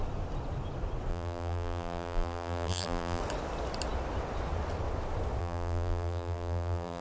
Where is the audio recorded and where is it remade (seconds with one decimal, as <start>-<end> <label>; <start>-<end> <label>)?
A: 0.0-1.1 recorded; 1.1-3.2 remade; 3.2-5.4 recorded; 5.4-7.0 remade